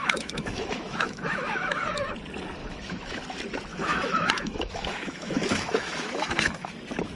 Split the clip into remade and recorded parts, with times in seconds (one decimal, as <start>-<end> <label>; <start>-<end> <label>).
0.0-2.1 remade; 2.1-2.6 recorded; 2.6-3.2 remade; 3.2-3.7 recorded; 3.7-6.7 remade; 6.7-7.2 recorded